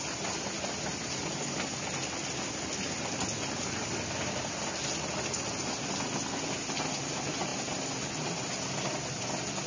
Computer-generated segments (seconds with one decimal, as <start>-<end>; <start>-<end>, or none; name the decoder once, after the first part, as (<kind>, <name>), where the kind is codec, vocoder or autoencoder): none

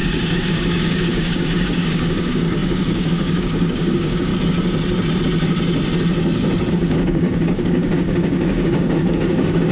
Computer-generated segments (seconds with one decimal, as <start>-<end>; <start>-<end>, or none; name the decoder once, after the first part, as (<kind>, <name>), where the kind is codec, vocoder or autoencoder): 0.0-4.3 (codec, DAC); 6.7-9.7